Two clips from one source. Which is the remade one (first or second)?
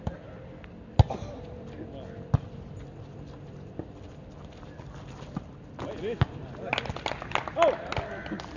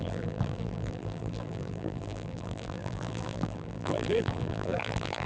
second